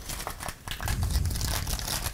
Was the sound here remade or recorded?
recorded